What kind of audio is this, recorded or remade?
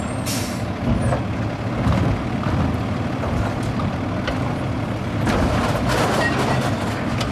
recorded